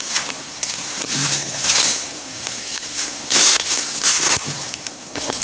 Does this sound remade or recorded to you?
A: remade